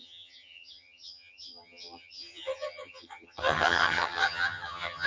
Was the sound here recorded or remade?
remade